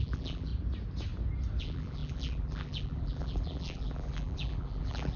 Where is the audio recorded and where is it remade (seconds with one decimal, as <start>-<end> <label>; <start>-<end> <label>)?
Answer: 0.0-0.5 remade; 0.5-1.6 recorded; 1.6-5.2 remade